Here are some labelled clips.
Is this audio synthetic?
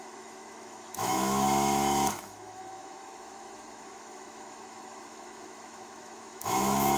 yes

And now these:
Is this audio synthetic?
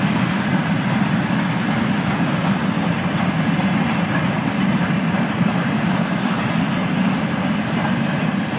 no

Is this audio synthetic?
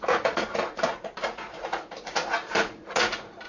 yes